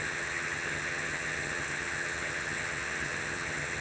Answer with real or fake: fake